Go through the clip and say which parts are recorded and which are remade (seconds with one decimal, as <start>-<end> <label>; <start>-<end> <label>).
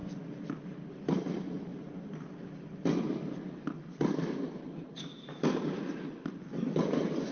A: 0.0-7.3 recorded